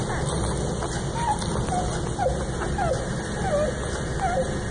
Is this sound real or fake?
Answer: real